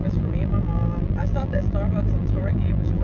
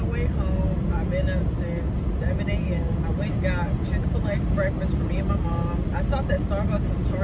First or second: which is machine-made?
first